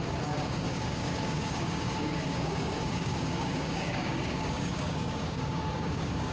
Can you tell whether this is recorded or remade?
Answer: remade